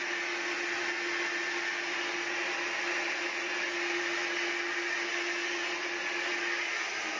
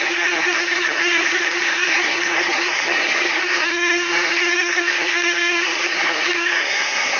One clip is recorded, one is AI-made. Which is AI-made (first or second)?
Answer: second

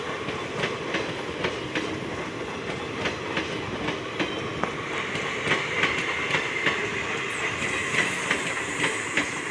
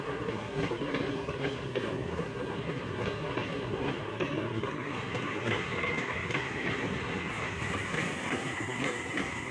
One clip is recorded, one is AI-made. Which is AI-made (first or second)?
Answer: second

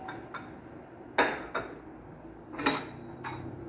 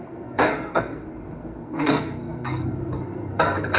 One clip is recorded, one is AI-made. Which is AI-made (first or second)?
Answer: second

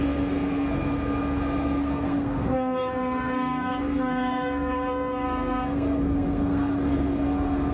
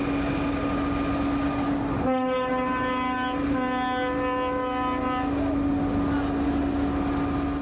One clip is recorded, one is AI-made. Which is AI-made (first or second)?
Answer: first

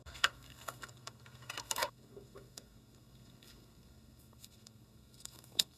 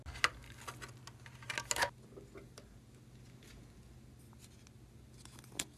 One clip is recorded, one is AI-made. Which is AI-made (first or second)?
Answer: first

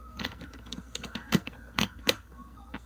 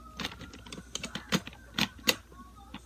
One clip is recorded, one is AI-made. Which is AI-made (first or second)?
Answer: first